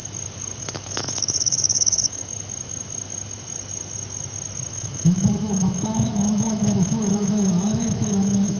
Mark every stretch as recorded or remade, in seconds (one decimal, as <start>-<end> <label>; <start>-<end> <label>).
0.0-0.6 recorded; 0.6-2.2 remade; 2.2-4.7 recorded; 4.7-8.6 remade